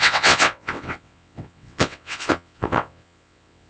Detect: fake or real fake